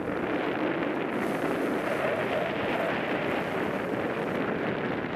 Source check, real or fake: real